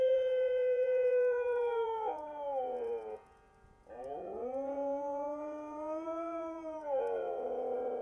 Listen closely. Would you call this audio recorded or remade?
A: remade